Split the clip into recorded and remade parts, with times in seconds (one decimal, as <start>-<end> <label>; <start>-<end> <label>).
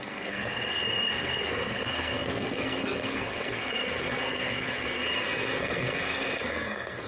0.0-7.1 remade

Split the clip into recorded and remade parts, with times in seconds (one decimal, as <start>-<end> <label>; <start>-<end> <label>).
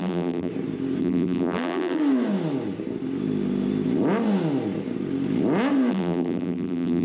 0.0-0.5 remade; 0.5-1.0 recorded; 1.0-2.0 remade; 2.0-5.9 recorded; 5.9-7.0 remade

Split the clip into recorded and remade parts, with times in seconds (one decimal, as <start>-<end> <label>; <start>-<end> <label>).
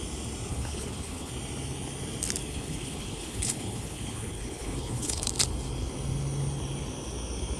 0.0-0.5 recorded; 0.5-1.3 remade; 1.3-2.5 recorded; 2.5-5.3 remade; 5.3-7.6 recorded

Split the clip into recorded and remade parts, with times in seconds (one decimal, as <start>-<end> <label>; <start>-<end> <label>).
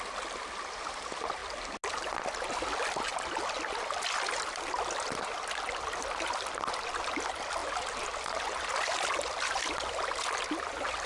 0.0-11.1 recorded